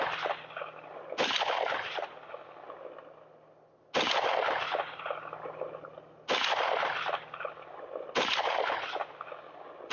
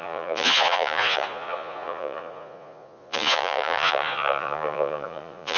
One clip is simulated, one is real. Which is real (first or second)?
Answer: first